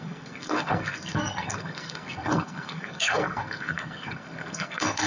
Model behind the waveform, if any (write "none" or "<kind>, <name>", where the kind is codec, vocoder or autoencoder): codec, SNAC